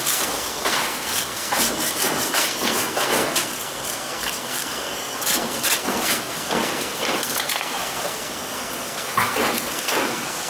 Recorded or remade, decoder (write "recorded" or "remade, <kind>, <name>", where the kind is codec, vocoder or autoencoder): remade, codec, SNAC